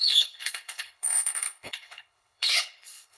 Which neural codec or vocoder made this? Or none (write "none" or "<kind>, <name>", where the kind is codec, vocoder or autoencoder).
codec, HILCodec